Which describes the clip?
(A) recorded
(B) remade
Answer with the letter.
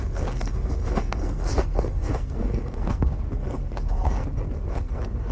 B